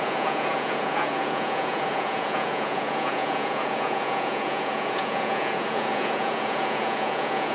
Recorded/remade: remade